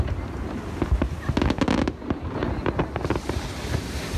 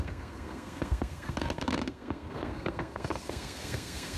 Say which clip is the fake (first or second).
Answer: second